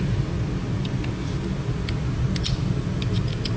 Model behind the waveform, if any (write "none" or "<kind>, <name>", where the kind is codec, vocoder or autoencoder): none